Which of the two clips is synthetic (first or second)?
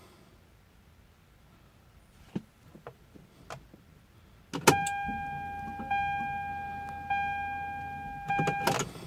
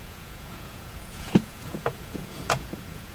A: second